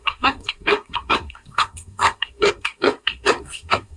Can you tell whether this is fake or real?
fake